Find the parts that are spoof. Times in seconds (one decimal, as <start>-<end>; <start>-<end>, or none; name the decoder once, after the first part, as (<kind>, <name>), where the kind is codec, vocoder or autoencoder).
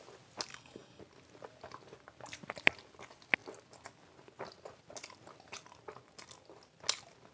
0.5-1.0 (codec, DAC)